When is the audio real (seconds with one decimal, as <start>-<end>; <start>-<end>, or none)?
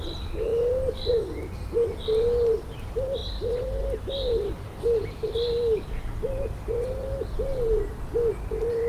0.5-1.1; 3.2-4.0; 4.7-8.3